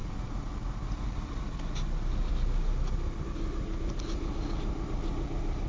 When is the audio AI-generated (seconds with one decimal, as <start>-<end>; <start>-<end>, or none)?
none